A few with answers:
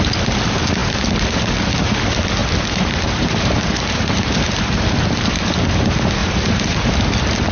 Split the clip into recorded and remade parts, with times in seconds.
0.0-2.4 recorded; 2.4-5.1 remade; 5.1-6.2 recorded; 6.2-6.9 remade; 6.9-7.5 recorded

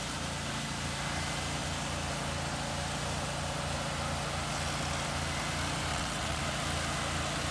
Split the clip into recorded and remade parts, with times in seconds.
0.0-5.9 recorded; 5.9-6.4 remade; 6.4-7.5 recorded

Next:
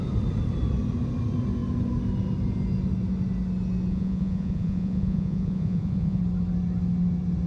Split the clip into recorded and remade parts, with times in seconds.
0.0-3.9 recorded; 3.9-6.2 remade; 6.2-7.5 recorded

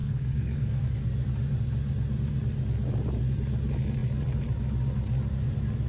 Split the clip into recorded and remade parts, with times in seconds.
0.0-1.0 remade; 1.0-5.9 recorded

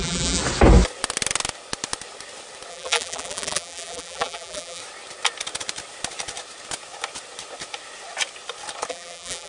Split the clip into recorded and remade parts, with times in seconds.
0.0-0.4 remade; 0.4-2.7 recorded; 2.7-4.8 remade; 4.8-8.9 recorded; 8.9-9.5 remade

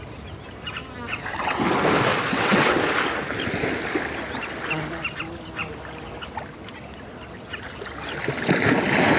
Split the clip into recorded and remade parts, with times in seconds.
0.0-1.1 recorded; 1.1-1.6 remade; 1.6-2.3 recorded; 2.3-2.8 remade; 2.8-9.2 recorded